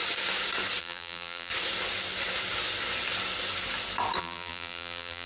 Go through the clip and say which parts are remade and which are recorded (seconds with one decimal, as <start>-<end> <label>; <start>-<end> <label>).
0.0-0.8 recorded; 0.8-1.5 remade; 1.5-4.2 recorded; 4.2-5.3 remade